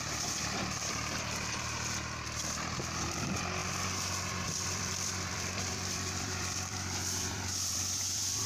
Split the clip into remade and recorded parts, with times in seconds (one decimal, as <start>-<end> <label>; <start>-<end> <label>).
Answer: 0.0-3.6 remade; 3.6-4.3 recorded; 4.3-8.5 remade